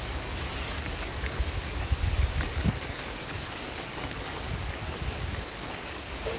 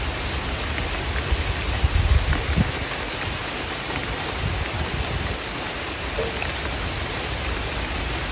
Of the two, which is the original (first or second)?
second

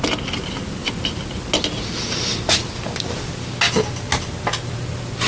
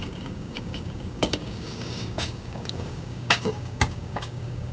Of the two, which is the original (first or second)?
first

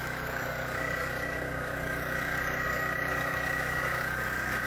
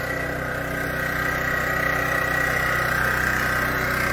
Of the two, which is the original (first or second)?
second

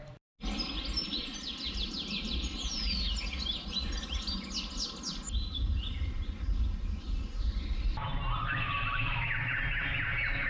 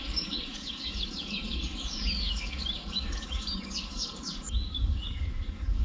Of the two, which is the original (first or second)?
first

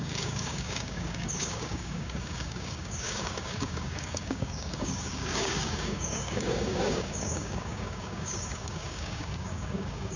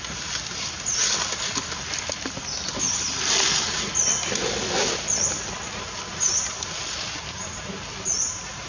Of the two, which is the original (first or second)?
second